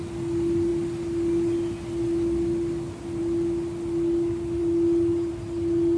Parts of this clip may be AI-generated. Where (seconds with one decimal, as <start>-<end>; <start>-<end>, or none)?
none